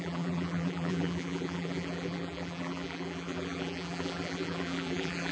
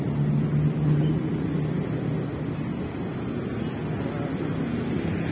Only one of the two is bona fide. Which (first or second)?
second